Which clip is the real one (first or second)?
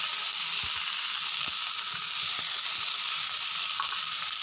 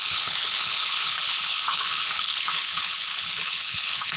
first